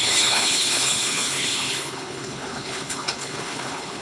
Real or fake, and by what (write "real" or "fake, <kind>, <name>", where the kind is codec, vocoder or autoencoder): fake, codec, HILCodec